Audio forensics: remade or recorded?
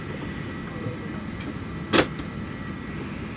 recorded